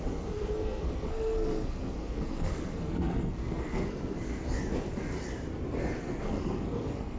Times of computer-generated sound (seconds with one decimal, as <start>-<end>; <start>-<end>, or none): 0.0-4.4; 6.0-7.2